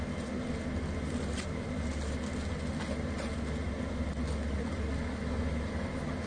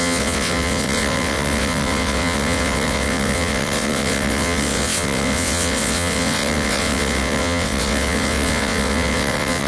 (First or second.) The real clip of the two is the first